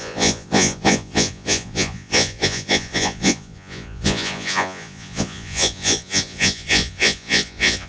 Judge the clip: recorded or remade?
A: remade